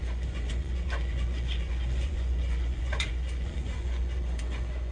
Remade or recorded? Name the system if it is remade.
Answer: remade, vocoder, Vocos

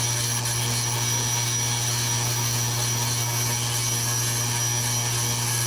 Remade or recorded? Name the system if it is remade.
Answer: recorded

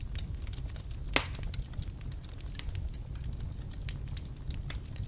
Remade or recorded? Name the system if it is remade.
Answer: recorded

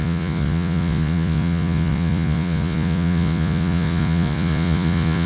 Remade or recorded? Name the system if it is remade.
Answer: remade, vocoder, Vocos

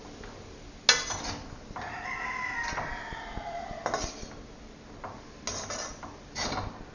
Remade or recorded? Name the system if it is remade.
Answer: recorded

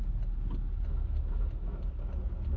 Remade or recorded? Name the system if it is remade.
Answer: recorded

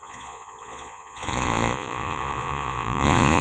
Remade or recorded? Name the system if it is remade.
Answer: remade, vocoder, Vocos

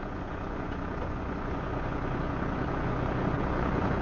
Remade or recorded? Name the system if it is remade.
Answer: remade, vocoder, Vocos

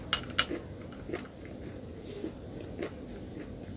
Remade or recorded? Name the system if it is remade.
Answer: recorded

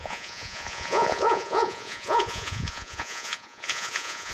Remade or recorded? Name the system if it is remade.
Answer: remade, vocoder, Vocos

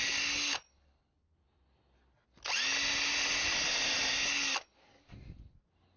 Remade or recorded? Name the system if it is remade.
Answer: recorded